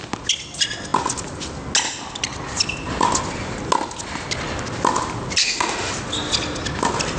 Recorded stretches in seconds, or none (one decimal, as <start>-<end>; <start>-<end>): 0.0-5.4; 5.9-7.2